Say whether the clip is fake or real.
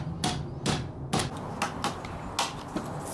real